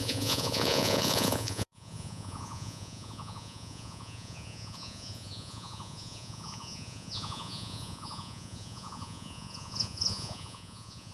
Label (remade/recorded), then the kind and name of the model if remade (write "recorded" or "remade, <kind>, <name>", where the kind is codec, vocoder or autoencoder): remade, vocoder, Vocos